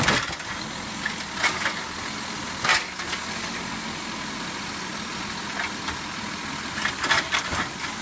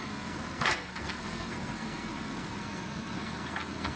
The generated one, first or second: second